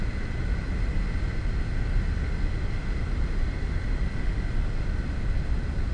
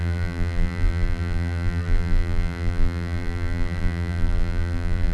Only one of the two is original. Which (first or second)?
first